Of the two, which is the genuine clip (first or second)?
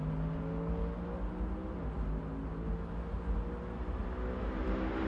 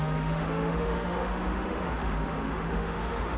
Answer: first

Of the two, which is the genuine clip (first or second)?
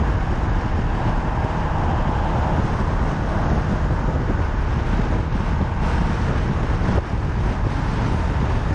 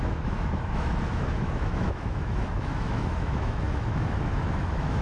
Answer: first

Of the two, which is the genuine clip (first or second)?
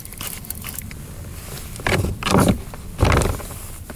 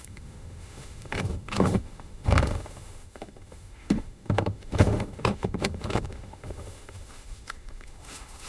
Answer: first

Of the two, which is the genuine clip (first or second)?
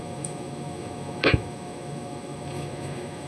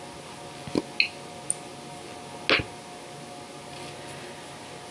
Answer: second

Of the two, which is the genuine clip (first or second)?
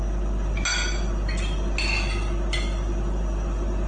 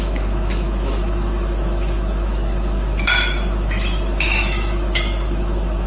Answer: first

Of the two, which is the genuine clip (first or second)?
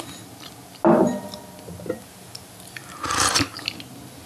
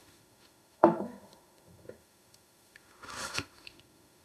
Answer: first